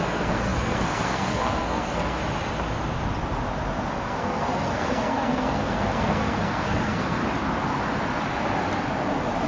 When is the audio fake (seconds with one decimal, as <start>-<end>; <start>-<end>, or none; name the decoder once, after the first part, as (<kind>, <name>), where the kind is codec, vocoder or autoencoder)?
0.0-2.2 (codec, SNAC); 3.9-7.2